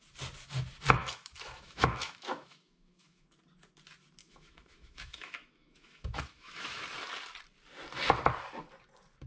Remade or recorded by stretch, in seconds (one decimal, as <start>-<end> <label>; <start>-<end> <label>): 0.0-1.0 recorded; 1.0-3.3 remade; 3.3-4.2 recorded; 4.2-6.8 remade; 6.8-9.3 recorded